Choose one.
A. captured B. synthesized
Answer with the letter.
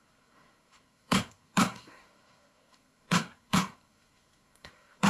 B